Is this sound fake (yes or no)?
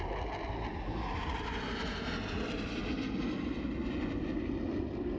no